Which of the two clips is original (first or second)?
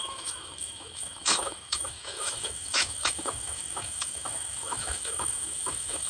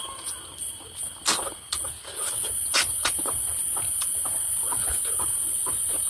second